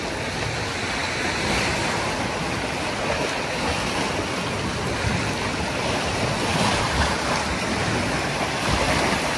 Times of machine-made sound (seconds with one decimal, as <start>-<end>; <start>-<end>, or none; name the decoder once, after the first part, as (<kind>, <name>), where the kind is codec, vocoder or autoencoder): 4.7-8.8 (vocoder, BigVGAN v2)

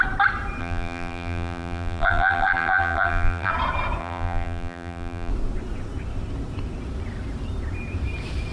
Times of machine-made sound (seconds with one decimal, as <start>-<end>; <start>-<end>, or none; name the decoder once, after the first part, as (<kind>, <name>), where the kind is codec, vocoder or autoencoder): 0.6-3.5 (vocoder, BigVGAN v2); 4.0-5.3